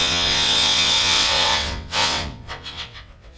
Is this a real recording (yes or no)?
no